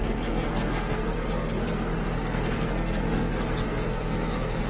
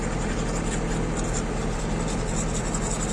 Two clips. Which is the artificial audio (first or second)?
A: first